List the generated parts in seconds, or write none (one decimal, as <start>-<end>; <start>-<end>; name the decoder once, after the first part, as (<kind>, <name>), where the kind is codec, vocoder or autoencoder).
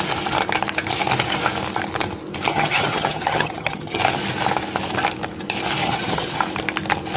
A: 2.5-4.0 (vocoder, HiFi-GAN); 5.8-6.4